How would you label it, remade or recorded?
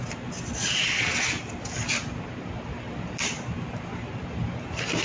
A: recorded